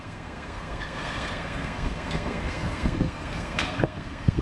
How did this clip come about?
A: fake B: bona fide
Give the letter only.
A